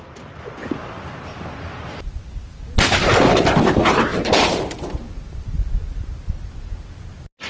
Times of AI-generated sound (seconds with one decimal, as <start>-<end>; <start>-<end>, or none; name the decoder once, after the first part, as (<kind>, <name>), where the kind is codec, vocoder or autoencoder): 4.1-5.7 (vocoder, BigVGAN v2)